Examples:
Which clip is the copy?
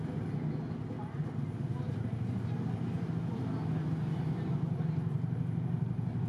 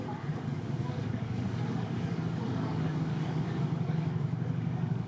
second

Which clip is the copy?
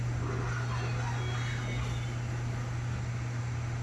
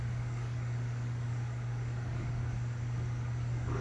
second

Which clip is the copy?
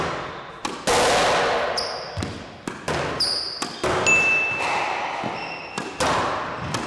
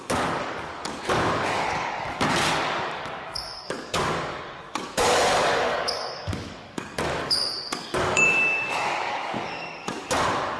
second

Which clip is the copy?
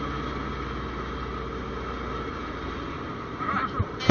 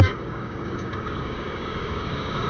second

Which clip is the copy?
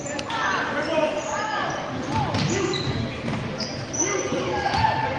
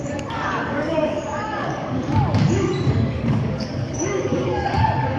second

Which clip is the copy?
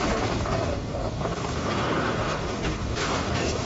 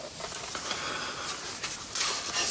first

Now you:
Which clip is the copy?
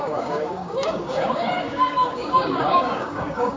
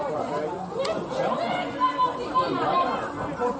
first